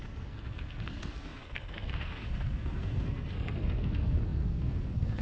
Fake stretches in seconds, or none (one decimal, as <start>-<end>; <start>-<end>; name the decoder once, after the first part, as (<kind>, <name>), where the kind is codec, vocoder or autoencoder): 0.0-5.2 (codec, SNAC)